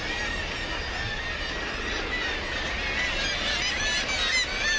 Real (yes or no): yes